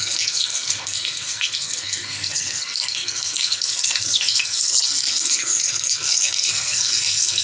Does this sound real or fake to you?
fake